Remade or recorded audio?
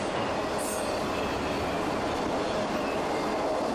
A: recorded